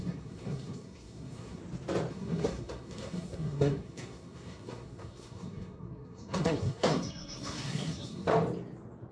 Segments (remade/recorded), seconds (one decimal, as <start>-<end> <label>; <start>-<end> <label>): 0.0-1.6 remade; 1.6-2.1 recorded; 2.1-8.3 remade; 8.3-9.1 recorded